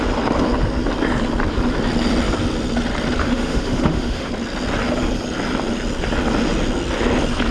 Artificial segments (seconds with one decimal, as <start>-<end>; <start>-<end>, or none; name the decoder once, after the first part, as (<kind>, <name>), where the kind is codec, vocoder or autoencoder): 3.2-4.3 (autoencoder, DAC-VAE)

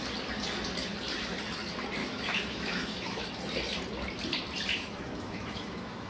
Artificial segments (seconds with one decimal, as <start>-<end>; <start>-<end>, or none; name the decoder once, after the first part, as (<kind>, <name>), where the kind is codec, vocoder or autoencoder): 2.0-3.3 (autoencoder, DAC-VAE); 4.7-6.1

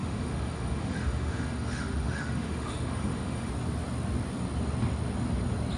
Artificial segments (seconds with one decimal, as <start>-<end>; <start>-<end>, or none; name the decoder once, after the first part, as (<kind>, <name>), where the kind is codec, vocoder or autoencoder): 0.0-3.5 (autoencoder, DAC-VAE)

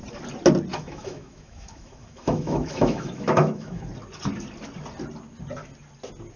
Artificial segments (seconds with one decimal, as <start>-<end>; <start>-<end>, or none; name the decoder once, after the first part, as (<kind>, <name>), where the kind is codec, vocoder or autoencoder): 0.7-3.9 (autoencoder, DAC-VAE)

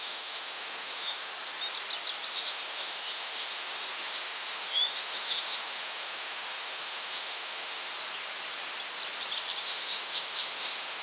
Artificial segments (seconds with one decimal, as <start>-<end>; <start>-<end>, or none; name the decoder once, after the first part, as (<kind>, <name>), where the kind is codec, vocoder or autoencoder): 0.0-1.3 (autoencoder, DAC-VAE); 2.3-7.9; 9.6-11.0

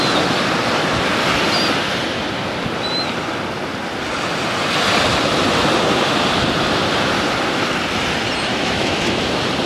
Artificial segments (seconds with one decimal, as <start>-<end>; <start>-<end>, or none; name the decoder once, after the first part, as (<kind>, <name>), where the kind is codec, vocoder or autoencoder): 8.5-9.2 (autoencoder, DAC-VAE)

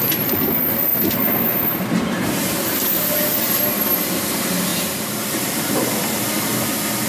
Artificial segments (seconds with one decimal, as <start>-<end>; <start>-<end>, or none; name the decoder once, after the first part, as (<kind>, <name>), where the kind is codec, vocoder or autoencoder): none